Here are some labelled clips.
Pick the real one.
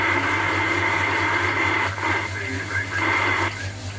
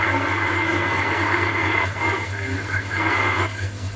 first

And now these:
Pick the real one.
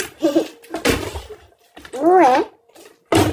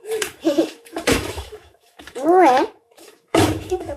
first